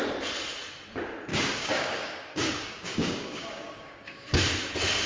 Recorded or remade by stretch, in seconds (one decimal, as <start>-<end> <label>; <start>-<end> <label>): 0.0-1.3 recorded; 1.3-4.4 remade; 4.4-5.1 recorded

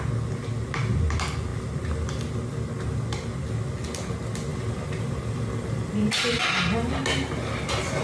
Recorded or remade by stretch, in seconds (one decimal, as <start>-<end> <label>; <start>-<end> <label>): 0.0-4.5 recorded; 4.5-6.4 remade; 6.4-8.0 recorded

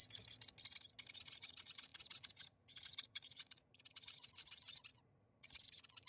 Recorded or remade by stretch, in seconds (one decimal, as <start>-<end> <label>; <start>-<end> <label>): 0.0-1.1 recorded; 1.1-6.1 remade

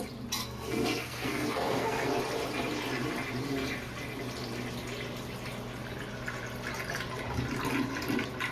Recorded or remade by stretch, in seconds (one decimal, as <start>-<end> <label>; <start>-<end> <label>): 0.0-0.4 recorded; 0.4-2.2 remade; 2.2-8.5 recorded

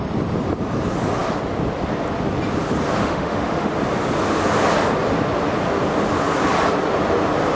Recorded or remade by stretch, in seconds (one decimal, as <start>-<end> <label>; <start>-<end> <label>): 0.0-3.0 recorded; 3.0-3.7 remade; 3.7-7.5 recorded

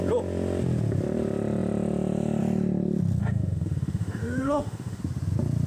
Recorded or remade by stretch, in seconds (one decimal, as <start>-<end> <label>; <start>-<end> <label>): 0.0-3.2 recorded; 3.2-5.0 remade; 5.0-5.7 recorded

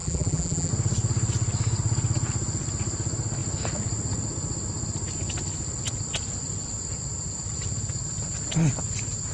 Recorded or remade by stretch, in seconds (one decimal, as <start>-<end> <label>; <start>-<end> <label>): 0.0-0.7 remade; 0.7-9.3 recorded